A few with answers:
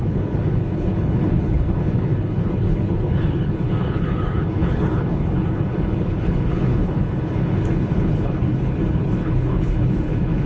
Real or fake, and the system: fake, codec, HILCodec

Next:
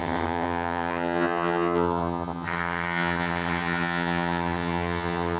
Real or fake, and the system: fake, vocoder, HiFi-GAN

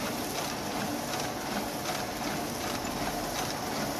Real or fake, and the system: real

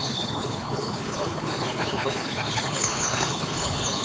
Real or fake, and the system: fake, codec, HILCodec